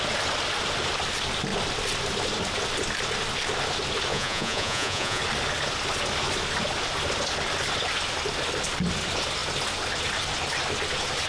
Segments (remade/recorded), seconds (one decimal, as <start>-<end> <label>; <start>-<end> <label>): 0.0-4.1 recorded; 4.1-5.2 remade; 5.2-11.3 recorded

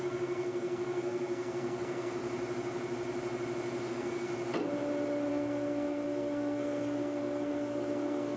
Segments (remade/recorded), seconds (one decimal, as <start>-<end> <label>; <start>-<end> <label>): 0.0-2.2 remade; 2.2-3.9 recorded; 3.9-4.3 remade; 4.3-5.3 recorded; 5.3-8.4 remade

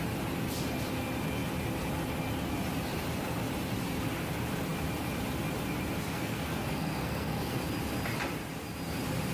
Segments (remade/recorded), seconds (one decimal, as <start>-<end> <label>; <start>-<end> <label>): 0.0-6.1 recorded; 6.1-7.6 remade; 7.6-9.3 recorded

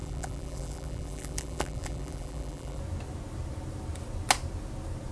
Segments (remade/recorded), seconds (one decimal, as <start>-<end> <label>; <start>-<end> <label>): 0.0-2.8 remade; 2.8-5.1 recorded

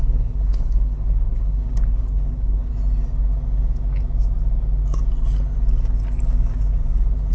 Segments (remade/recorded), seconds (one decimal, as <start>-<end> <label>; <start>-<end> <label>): 0.0-2.7 remade; 2.7-7.3 recorded

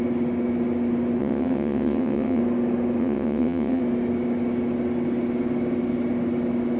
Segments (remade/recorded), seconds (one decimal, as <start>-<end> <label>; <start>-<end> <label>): 0.0-1.2 recorded; 1.2-2.4 remade; 2.4-3.0 recorded; 3.0-3.8 remade; 3.8-6.8 recorded

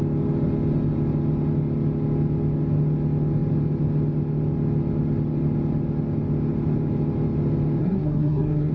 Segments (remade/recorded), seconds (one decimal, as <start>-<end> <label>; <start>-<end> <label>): 0.0-7.8 recorded; 7.8-8.7 remade

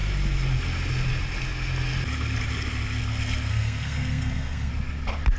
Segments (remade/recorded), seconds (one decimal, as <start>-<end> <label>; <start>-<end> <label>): 0.0-3.5 recorded; 3.5-4.7 remade; 4.7-5.4 recorded